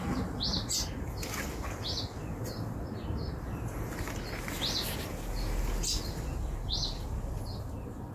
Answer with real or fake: real